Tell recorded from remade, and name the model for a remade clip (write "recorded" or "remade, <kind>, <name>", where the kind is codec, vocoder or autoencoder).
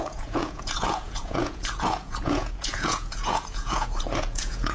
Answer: remade, vocoder, Vocos